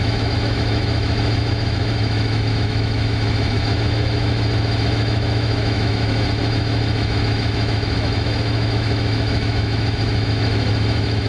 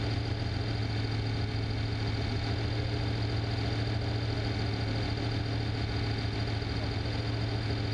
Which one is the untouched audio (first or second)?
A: second